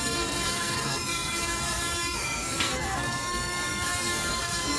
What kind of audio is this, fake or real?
fake